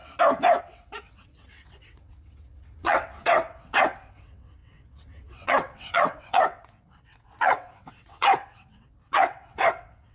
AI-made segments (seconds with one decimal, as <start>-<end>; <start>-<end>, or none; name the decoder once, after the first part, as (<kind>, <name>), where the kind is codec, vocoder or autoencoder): 0.6-10.1 (vocoder, WaveNeXt)